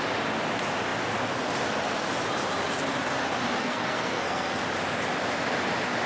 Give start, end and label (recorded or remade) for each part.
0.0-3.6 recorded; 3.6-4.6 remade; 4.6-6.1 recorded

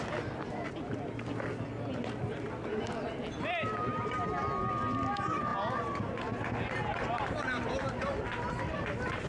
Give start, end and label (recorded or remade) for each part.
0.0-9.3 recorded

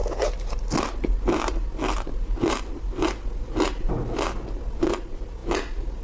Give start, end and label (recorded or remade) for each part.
0.0-6.0 recorded